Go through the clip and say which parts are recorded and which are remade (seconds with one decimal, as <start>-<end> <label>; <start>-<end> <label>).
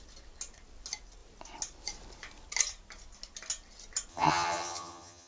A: 0.0-4.1 recorded; 4.1-5.3 remade